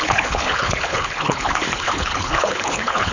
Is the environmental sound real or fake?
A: fake